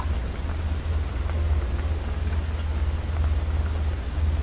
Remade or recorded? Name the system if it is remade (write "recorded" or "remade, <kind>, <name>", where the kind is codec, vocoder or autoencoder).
recorded